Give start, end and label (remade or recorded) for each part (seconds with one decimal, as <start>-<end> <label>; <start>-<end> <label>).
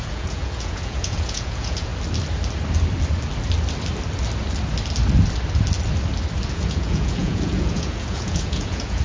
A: 0.0-1.9 remade; 1.9-6.5 recorded; 6.5-9.0 remade